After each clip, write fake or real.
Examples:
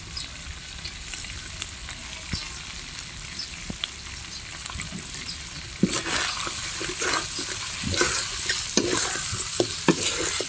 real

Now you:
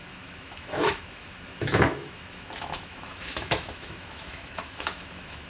fake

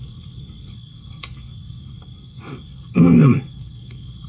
fake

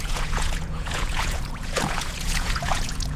fake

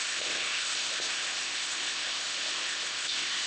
fake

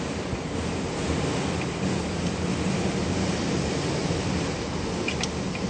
real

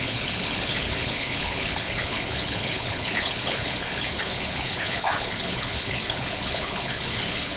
fake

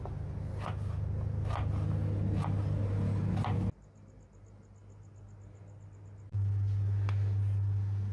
real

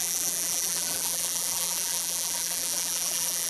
fake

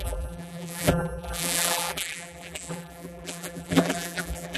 fake